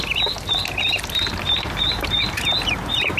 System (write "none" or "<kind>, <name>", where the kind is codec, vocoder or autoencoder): vocoder, BigVGAN v2